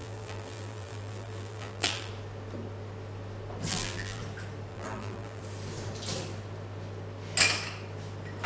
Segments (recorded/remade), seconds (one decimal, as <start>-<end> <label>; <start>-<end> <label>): 0.0-2.1 remade; 2.1-3.7 recorded; 3.7-4.2 remade; 4.2-4.7 recorded; 4.7-5.4 remade; 5.4-8.5 recorded